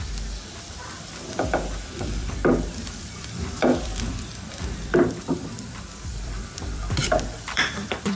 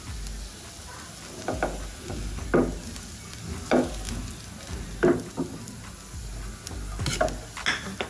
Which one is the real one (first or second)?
second